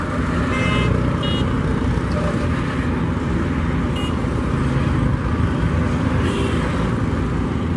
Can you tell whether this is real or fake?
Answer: real